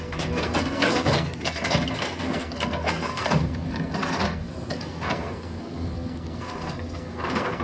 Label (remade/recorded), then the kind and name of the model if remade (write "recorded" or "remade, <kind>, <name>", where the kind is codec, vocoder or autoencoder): remade, codec, SNAC